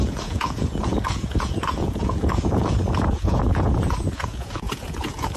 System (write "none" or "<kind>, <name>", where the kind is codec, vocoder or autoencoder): vocoder, Vocos